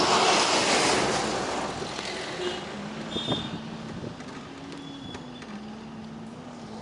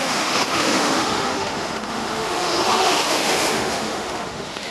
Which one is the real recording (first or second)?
first